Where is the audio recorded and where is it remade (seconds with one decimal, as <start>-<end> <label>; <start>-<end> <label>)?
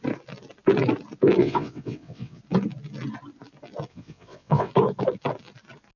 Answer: 0.0-1.4 recorded; 1.4-2.4 remade; 2.4-3.9 recorded; 3.9-4.7 remade; 4.7-6.0 recorded